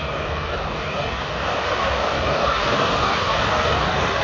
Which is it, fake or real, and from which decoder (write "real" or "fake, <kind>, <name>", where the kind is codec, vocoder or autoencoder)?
fake, codec, DAC